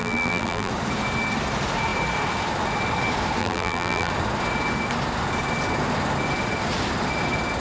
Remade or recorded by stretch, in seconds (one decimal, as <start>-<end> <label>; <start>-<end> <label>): 0.0-0.7 remade; 0.7-3.4 recorded; 3.4-4.1 remade; 4.1-7.6 recorded